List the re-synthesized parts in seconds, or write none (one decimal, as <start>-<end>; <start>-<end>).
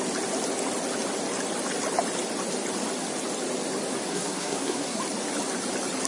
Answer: 4.1-5.0